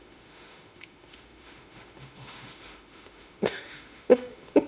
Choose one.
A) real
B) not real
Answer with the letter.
B